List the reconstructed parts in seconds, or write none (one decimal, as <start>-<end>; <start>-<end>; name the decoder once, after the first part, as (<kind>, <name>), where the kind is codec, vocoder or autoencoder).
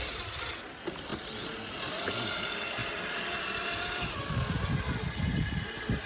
none